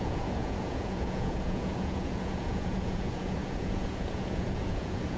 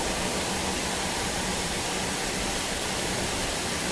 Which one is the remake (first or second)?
first